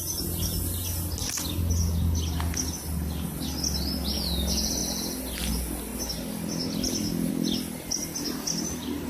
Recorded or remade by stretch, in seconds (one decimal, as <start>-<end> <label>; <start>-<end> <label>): 0.0-9.1 recorded